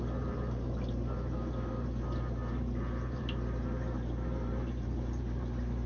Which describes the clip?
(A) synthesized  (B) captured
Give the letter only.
A